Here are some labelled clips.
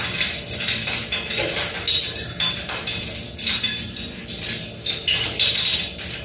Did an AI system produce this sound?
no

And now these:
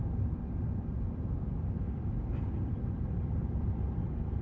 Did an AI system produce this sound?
yes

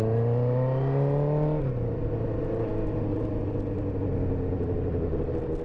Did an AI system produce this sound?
no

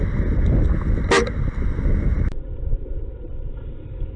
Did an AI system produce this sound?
no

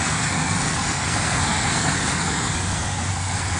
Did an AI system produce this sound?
yes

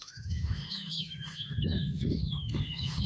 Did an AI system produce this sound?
yes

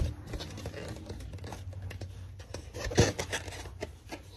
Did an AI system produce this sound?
no